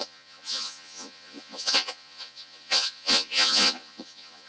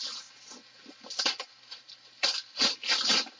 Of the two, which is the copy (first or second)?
first